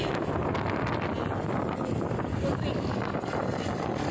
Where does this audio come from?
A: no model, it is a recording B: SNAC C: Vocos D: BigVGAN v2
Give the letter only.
A